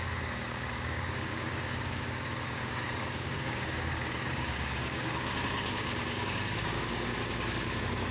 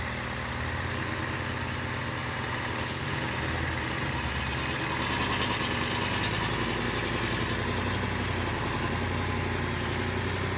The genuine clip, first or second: second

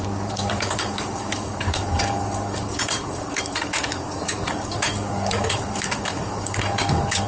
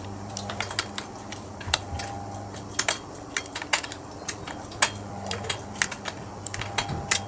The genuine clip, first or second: second